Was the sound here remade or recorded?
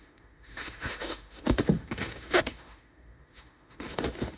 remade